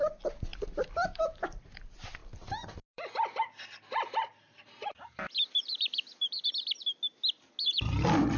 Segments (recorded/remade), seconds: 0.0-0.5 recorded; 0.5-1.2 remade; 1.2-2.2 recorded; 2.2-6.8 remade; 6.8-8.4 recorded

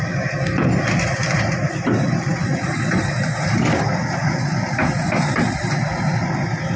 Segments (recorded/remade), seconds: 0.0-6.8 recorded

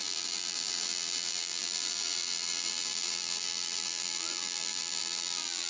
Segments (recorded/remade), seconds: 0.0-5.7 remade

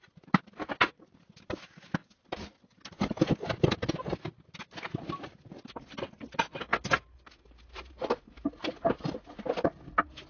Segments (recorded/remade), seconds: 0.0-10.3 recorded

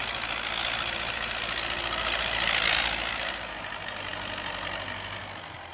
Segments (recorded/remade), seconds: 0.0-5.7 recorded

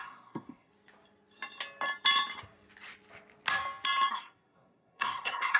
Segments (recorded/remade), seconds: 0.0-0.7 remade; 0.7-4.1 recorded; 4.1-5.6 remade

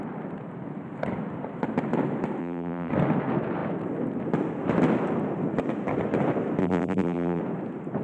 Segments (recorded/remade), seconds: 0.0-2.4 recorded; 2.4-2.9 remade; 2.9-6.6 recorded; 6.6-7.4 remade; 7.4-8.0 recorded

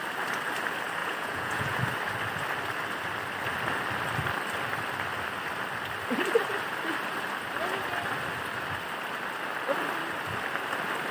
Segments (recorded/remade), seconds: 0.0-1.0 recorded; 1.0-1.8 remade; 1.8-11.1 recorded